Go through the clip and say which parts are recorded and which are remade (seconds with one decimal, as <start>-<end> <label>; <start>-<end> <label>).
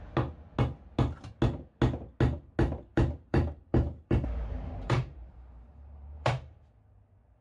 0.0-2.9 recorded; 2.9-6.3 remade; 6.3-7.4 recorded